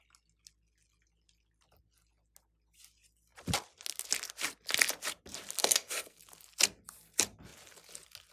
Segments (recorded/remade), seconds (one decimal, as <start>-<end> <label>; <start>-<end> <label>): 0.0-5.6 recorded; 5.6-6.2 remade; 6.2-8.3 recorded